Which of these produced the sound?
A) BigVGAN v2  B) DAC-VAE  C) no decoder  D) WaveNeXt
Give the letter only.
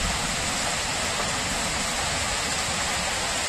A